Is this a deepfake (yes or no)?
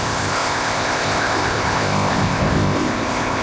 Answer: yes